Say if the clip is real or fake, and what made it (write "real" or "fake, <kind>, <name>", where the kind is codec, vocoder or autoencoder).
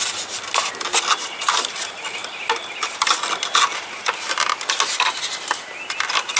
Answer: real